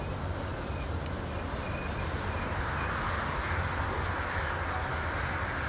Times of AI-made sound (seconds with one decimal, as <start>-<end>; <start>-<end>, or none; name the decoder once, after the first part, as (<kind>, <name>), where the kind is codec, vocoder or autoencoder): none